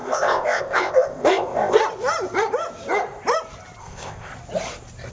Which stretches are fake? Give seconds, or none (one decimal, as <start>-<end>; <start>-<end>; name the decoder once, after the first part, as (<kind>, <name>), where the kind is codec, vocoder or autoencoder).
0.0-1.8 (codec, ZipCodec); 3.8-4.3